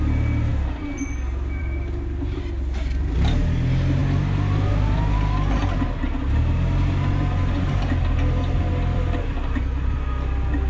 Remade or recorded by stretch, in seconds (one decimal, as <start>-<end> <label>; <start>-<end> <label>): 0.0-10.7 recorded